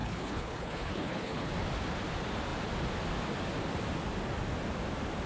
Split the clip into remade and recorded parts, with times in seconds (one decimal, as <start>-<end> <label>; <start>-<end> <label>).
0.0-1.5 remade; 1.5-5.3 recorded